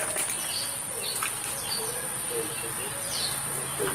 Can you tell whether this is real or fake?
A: real